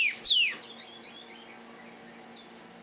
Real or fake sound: real